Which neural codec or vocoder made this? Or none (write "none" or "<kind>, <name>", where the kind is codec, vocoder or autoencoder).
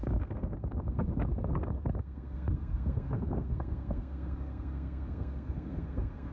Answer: codec, SNAC